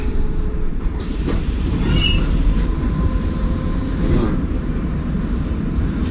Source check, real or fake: fake